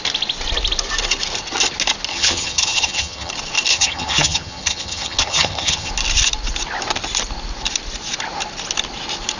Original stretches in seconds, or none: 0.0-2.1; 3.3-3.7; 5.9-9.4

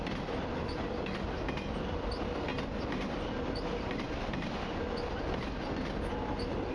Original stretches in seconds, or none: 0.0-6.7

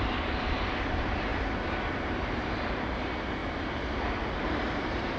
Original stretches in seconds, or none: 1.3-1.9; 3.4-4.4

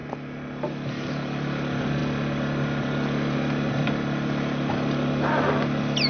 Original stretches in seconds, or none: 0.0-6.1

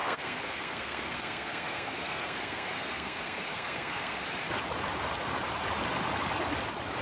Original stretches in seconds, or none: 4.2-7.0